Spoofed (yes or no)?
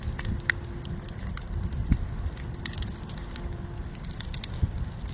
no